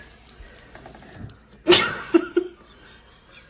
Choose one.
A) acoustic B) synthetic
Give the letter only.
A